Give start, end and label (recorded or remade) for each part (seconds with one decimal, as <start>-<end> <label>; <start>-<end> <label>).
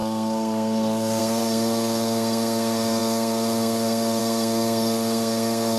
0.0-5.8 remade